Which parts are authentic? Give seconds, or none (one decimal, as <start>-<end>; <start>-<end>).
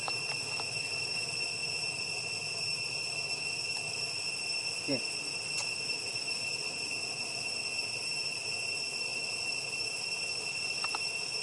0.0-11.4